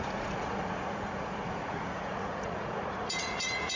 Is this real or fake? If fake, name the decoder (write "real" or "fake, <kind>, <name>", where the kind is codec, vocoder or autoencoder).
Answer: fake, vocoder, Vocos